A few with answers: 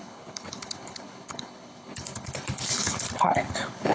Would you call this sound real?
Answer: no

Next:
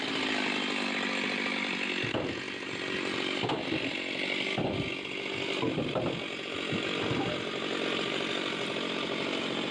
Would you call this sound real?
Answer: no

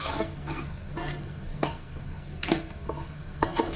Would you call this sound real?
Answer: no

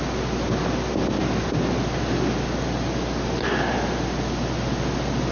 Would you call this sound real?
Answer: yes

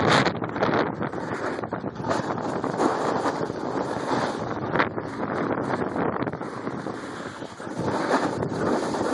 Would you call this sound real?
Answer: yes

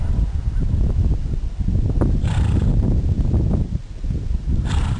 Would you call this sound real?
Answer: yes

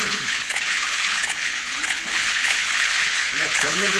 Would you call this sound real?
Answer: no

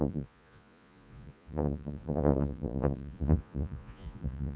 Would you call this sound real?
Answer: no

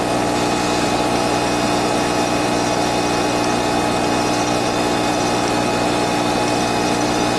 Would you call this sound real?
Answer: yes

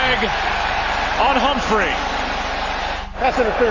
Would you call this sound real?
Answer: yes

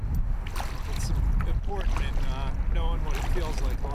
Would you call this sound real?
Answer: yes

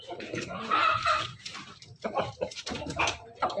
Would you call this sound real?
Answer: no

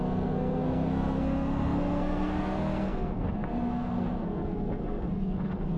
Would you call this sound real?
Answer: no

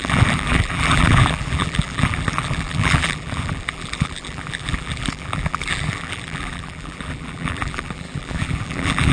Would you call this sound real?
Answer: no